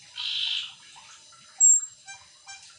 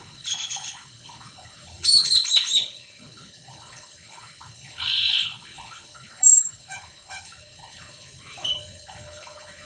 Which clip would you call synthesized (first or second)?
second